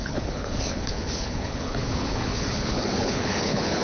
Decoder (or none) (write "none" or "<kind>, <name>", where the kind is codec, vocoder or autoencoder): codec, HILCodec